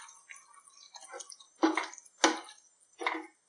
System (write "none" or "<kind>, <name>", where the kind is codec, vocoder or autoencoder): none